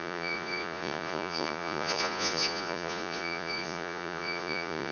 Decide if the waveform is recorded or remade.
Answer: remade